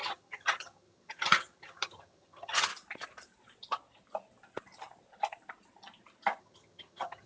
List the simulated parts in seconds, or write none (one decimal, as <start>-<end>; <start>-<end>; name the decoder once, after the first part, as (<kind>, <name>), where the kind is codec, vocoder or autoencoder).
0.0-2.7 (vocoder, HiFi-GAN); 6.4-7.3